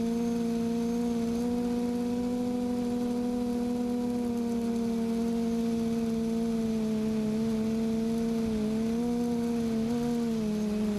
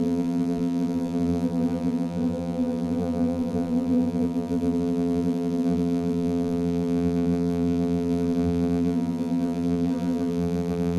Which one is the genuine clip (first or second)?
first